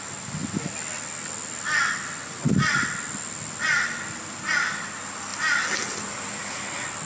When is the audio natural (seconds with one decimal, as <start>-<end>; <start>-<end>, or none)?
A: 0.0-7.0